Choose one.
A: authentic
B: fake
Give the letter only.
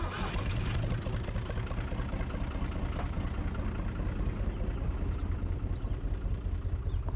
A